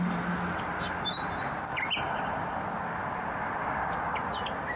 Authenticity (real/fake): real